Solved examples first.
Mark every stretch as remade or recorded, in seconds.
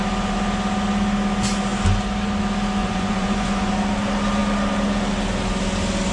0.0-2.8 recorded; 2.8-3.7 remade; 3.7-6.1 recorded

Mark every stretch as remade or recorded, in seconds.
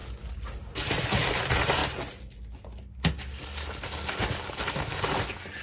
0.0-5.6 recorded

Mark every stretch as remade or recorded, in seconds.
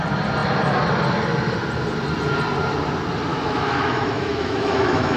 0.0-3.3 recorded; 3.3-5.2 remade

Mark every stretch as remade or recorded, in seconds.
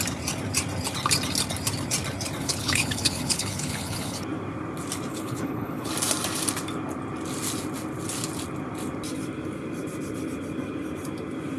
0.0-2.4 recorded; 2.4-4.2 remade; 4.2-5.1 recorded; 5.1-5.9 remade; 5.9-11.6 recorded